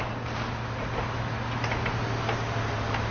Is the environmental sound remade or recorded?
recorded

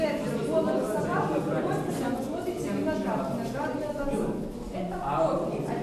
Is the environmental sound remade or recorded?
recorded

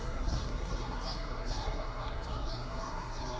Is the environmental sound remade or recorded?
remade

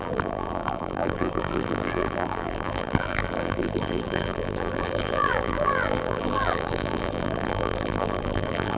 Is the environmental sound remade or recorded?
remade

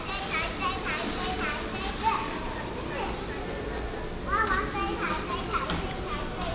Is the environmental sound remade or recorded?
recorded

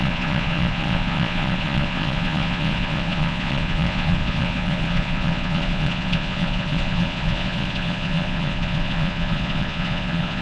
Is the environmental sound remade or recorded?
remade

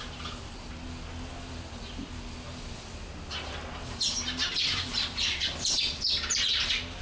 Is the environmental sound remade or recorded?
recorded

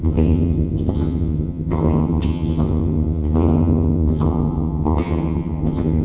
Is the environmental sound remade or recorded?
remade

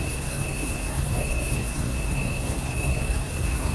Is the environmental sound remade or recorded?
remade